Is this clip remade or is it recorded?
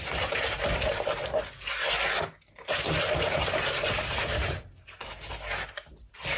recorded